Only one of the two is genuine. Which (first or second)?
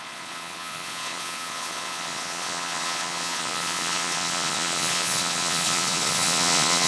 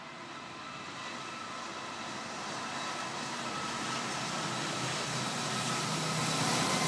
second